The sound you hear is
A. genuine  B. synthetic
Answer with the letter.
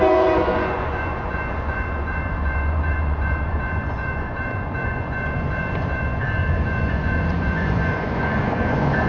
B